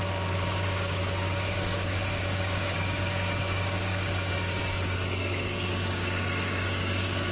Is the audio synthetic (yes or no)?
yes